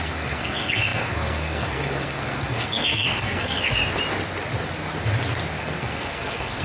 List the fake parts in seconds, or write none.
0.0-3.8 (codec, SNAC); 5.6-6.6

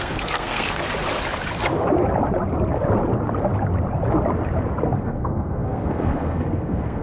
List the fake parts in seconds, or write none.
0.0-0.8 (codec, SNAC); 5.0-7.0

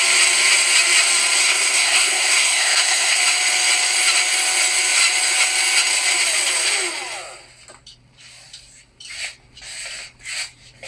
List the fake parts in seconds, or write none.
1.4-3.2 (codec, SNAC)